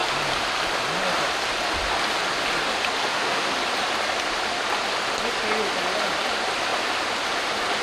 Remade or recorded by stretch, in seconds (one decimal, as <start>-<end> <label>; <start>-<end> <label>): 0.0-3.0 recorded; 3.0-3.5 remade; 3.5-7.8 recorded